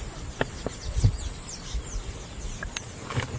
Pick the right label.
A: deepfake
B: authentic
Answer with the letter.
B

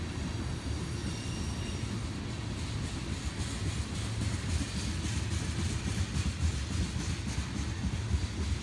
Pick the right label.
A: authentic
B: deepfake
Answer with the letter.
A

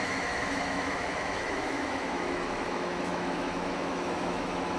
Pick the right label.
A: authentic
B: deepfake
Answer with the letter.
B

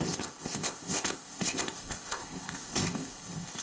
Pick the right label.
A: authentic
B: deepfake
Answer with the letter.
B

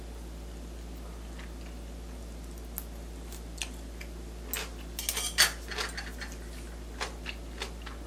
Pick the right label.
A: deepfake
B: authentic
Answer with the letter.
B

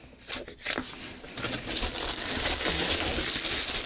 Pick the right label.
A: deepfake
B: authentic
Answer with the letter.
B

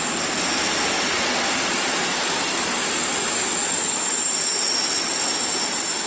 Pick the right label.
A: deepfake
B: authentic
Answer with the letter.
B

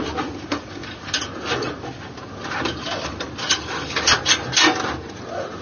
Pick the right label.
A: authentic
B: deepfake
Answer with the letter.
A